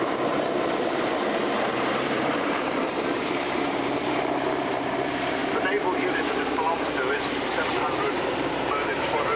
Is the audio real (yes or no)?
no